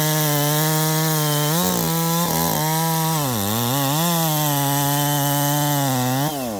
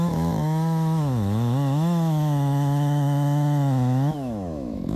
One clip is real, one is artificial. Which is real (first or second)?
first